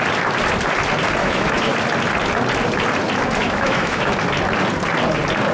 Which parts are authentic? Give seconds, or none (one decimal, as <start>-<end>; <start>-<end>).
0.0-1.2; 1.7-3.4; 4.1-5.5